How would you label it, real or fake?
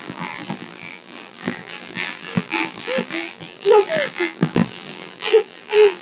fake